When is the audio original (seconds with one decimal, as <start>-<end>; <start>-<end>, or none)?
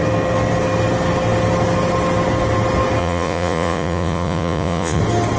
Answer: 0.0-3.0; 5.0-5.4